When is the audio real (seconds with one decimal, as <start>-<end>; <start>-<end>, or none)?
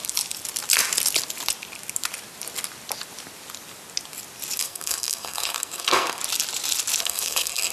0.0-4.6; 6.2-7.0